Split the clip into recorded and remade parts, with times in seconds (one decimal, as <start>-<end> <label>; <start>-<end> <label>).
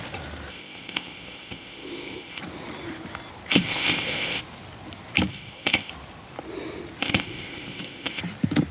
0.0-0.5 recorded; 0.5-2.4 remade; 2.4-3.5 recorded; 3.5-4.4 remade; 4.4-5.3 recorded; 5.3-5.9 remade; 5.9-7.0 recorded; 7.0-8.2 remade; 8.2-8.7 recorded